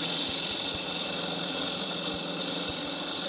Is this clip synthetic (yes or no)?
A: yes